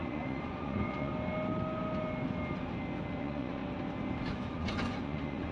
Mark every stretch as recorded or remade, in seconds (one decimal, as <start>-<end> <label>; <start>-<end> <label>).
0.0-1.1 remade; 1.1-3.2 recorded; 3.2-3.6 remade; 3.6-4.3 recorded; 4.3-5.5 remade